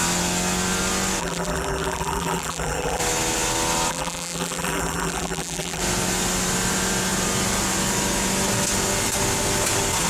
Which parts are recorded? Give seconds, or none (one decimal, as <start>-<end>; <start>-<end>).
0.0-1.2; 3.0-3.9; 5.8-10.1